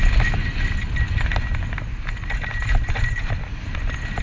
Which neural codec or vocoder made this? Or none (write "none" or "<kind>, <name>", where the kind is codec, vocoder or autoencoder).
none